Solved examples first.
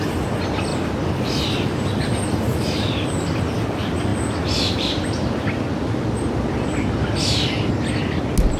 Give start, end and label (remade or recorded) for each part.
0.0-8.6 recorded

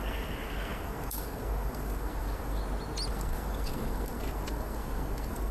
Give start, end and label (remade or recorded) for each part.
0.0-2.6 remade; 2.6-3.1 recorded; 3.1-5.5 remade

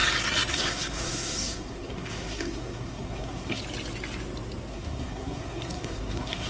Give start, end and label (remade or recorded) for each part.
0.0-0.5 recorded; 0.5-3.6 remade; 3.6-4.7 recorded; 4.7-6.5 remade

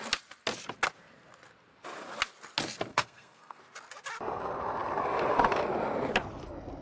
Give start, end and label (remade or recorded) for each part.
0.0-2.9 recorded; 2.9-3.6 remade; 3.6-6.8 recorded

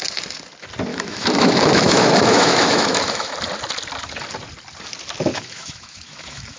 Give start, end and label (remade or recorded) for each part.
0.0-0.9 recorded; 0.9-3.3 remade; 3.3-5.3 recorded; 5.3-6.6 remade

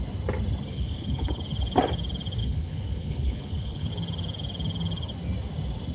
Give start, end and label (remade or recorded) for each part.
0.0-0.7 recorded; 0.7-1.4 remade; 1.4-2.4 recorded; 2.4-3.9 remade; 3.9-5.9 recorded

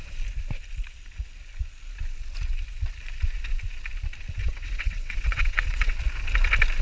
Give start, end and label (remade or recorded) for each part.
0.0-4.4 recorded; 4.4-6.0 remade; 6.0-6.8 recorded